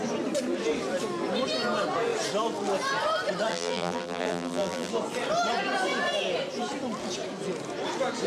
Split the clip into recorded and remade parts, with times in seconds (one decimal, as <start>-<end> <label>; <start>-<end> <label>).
0.0-3.5 recorded; 3.5-4.9 remade; 4.9-8.3 recorded